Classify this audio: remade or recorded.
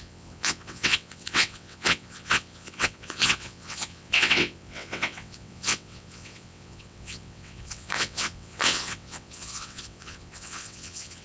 remade